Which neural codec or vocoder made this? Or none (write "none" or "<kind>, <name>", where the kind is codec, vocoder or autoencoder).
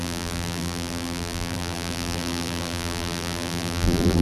vocoder, BigVGAN v2